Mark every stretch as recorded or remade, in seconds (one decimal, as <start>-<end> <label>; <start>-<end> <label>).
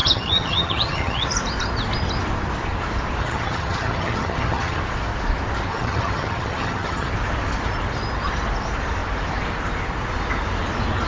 0.0-1.3 remade; 1.3-3.2 recorded; 3.2-4.8 remade; 4.8-5.7 recorded; 5.7-7.1 remade; 7.1-11.1 recorded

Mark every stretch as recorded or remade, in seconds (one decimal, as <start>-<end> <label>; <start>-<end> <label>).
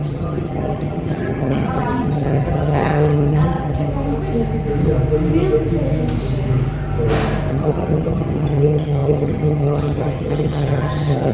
0.0-3.9 remade; 3.9-7.5 recorded; 7.5-11.3 remade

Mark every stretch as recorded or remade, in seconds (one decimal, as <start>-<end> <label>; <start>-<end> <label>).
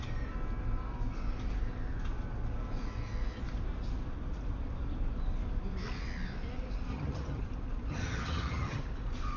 0.0-6.9 recorded; 6.9-7.4 remade; 7.4-7.9 recorded; 7.9-8.8 remade; 8.8-9.4 recorded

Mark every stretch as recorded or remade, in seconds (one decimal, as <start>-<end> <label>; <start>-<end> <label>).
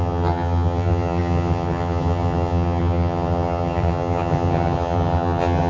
0.0-5.7 remade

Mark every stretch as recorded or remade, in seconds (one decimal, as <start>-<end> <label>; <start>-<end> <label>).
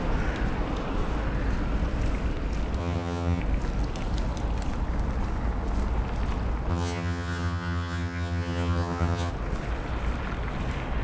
0.0-2.8 recorded; 2.8-3.4 remade; 3.4-6.7 recorded; 6.7-9.3 remade; 9.3-11.0 recorded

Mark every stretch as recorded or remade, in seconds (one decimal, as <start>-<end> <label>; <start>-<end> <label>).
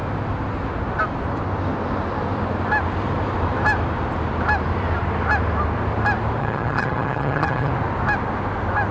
0.0-6.4 recorded; 6.4-7.7 remade; 7.7-8.9 recorded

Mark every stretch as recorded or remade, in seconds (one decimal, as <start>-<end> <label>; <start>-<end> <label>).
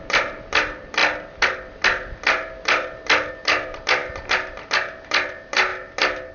0.0-6.3 recorded